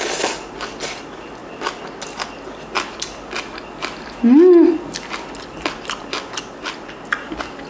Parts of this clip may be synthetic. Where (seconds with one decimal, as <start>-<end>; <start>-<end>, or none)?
none

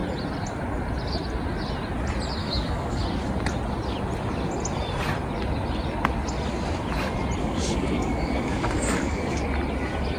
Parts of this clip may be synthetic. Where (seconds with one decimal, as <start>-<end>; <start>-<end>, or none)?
2.4-3.0; 7.4-9.4